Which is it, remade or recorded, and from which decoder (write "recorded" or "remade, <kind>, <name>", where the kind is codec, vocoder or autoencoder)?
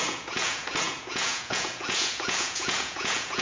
remade, vocoder, Vocos